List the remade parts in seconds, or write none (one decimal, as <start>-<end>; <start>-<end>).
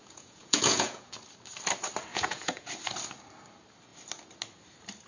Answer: 0.0-1.1; 2.1-2.7